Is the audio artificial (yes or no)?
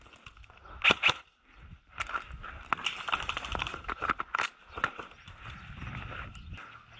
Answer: no